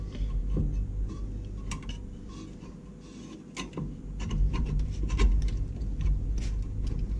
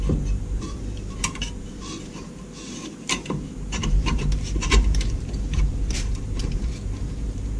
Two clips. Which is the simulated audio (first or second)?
second